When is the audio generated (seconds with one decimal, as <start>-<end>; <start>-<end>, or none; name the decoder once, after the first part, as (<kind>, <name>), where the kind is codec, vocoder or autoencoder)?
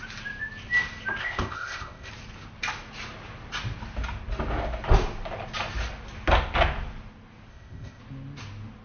1.2-2.1 (codec, ZipCodec); 7.5-8.0